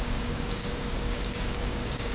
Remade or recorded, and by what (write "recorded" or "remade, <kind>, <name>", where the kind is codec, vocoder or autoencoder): remade, codec, DAC